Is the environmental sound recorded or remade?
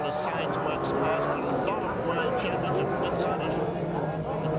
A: recorded